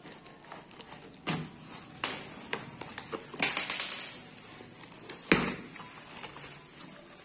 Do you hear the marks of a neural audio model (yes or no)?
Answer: no